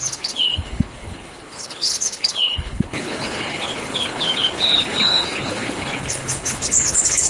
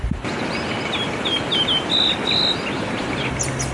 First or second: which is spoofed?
first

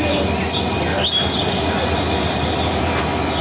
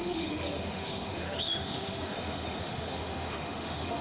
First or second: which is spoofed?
second